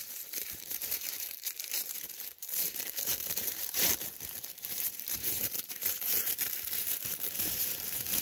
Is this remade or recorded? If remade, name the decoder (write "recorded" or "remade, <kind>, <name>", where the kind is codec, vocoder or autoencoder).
remade, vocoder, BigVGAN v2